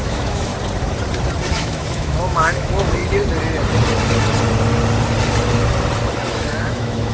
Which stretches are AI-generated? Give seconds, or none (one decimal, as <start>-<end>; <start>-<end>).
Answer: 0.0-0.5; 1.5-3.0; 6.3-7.1